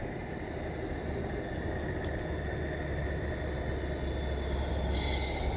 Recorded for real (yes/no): yes